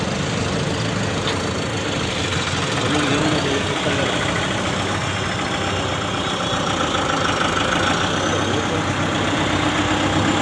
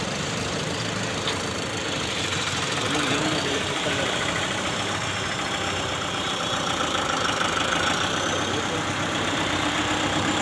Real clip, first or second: first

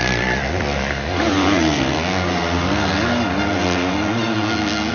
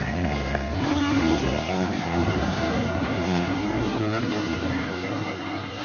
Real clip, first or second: first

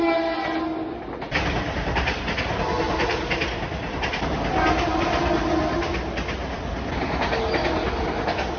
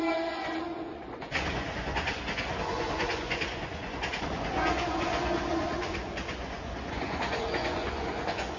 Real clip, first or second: first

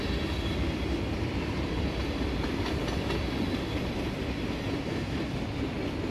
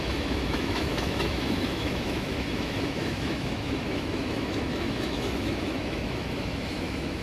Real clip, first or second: first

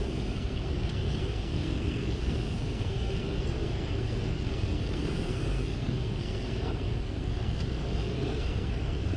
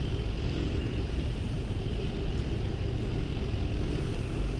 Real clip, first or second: second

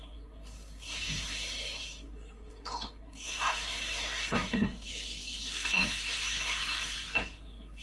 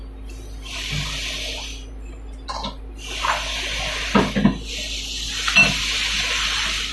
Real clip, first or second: second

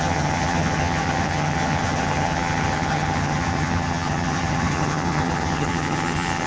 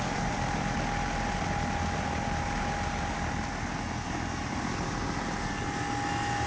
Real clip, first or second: second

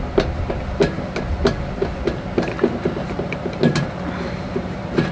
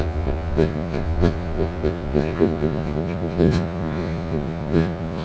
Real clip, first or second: first